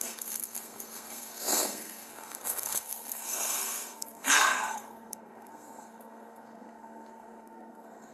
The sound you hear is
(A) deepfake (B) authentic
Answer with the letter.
A